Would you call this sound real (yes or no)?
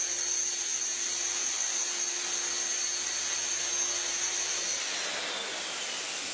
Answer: yes